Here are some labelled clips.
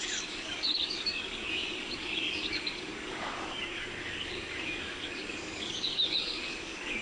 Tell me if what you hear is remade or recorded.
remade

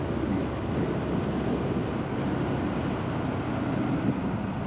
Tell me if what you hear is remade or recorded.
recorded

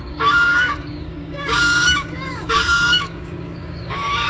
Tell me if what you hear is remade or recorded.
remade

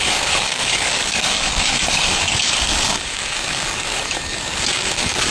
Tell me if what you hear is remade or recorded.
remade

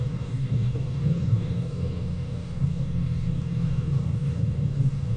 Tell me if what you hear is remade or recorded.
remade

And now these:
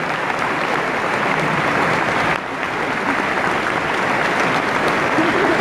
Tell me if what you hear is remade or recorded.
recorded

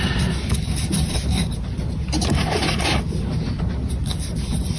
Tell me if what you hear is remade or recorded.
recorded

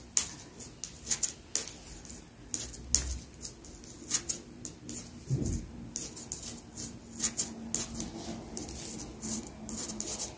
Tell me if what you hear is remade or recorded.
recorded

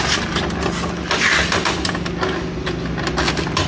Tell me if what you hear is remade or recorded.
recorded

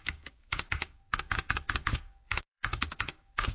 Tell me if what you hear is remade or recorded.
remade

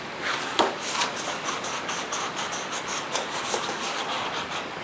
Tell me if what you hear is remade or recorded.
remade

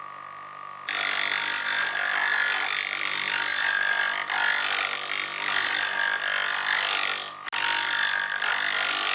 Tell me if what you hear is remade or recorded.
recorded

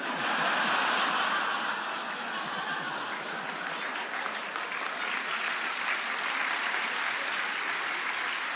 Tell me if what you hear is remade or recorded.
recorded